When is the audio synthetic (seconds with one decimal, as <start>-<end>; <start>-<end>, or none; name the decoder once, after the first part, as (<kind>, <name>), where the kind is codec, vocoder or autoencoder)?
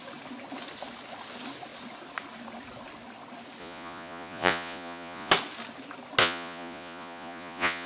3.6-5.3 (vocoder, Vocos); 6.2-7.9